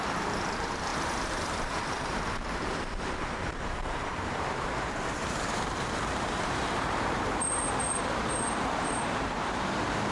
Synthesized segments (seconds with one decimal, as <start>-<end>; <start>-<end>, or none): 0.0-10.1